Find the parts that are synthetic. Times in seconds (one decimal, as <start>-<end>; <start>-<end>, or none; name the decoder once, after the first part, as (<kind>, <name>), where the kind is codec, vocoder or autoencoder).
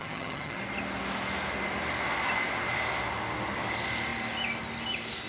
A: 0.0-0.6 (vocoder, HiFi-GAN)